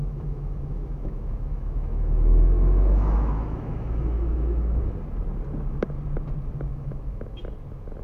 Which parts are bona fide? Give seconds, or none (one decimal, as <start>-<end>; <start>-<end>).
4.8-6.7; 7.4-8.0